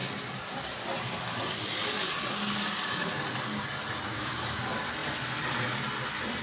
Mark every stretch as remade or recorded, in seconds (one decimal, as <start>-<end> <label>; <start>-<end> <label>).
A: 0.0-4.1 recorded; 4.1-4.6 remade; 4.6-6.4 recorded